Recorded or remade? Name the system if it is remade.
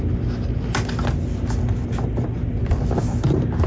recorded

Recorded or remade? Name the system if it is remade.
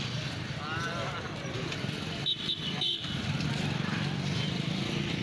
recorded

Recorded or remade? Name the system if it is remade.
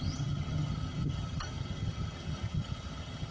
remade, vocoder, HiFi-GAN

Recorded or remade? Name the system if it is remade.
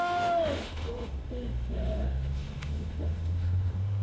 remade, autoencoder, DAC-VAE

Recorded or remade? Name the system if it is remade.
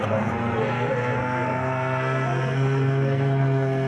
remade, codec, SNAC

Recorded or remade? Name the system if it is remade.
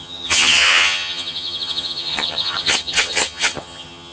remade, vocoder, HiFi-GAN